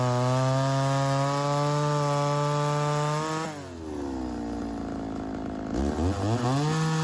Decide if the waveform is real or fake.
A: real